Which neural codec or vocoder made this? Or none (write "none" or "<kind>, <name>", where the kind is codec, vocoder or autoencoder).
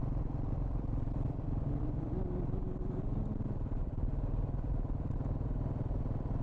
vocoder, BigVGAN v2